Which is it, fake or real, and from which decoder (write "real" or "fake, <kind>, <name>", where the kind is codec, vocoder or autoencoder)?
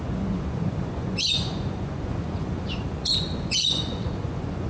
fake, vocoder, Vocos